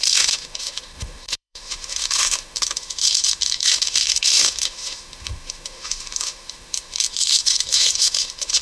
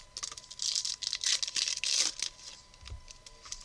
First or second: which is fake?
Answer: first